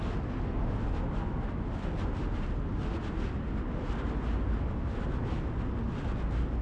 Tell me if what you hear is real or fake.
real